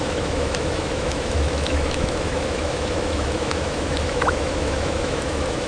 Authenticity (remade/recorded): remade